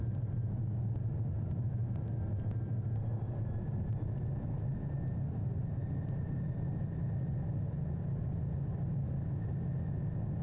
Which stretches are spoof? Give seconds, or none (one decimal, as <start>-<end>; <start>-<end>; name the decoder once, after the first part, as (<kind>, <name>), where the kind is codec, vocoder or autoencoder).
5.8-7.1 (vocoder, BigVGAN v2)